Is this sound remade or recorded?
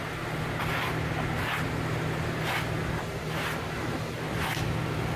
recorded